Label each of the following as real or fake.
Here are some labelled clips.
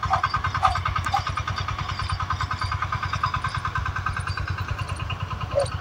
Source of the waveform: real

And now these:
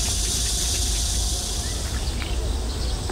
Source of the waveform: real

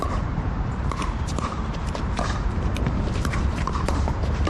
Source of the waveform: fake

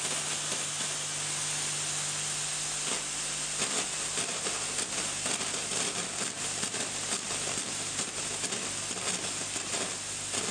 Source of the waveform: real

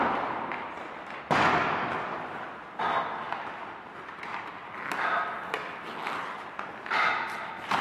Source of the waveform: real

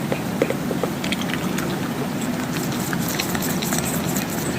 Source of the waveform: real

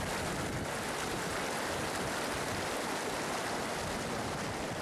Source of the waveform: real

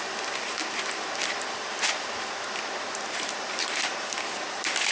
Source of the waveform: fake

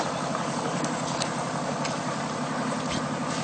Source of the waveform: fake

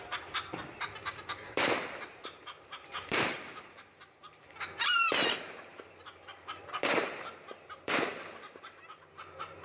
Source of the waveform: fake